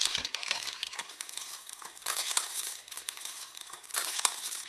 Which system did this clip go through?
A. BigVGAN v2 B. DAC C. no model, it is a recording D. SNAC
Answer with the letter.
D